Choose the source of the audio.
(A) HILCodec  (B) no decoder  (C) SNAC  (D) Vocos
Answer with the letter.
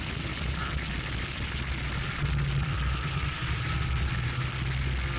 B